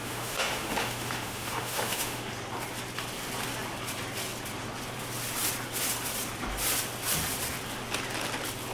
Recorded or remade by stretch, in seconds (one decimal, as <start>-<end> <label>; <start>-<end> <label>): 0.0-2.3 remade; 2.3-8.7 recorded